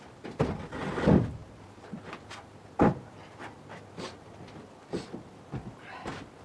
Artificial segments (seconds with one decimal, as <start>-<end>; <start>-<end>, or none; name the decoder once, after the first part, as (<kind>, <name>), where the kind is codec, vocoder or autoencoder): none